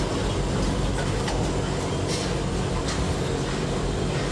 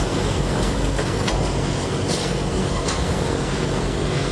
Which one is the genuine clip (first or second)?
first